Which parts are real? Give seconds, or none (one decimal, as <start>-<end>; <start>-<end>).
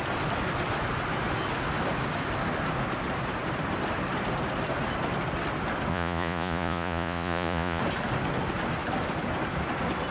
0.0-5.9; 7.8-10.1